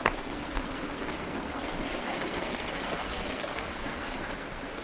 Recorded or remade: remade